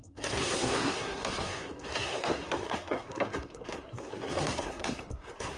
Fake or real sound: fake